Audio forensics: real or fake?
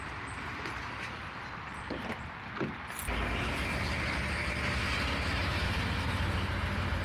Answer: real